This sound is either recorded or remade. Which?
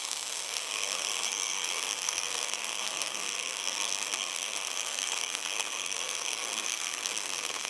remade